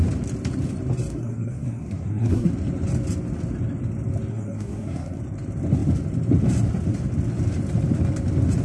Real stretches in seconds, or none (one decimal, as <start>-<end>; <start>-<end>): 0.0-1.1; 2.5-4.3; 5.2-8.6